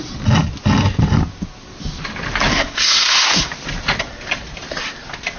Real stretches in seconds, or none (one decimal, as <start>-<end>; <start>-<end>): 0.0-2.5; 3.5-5.4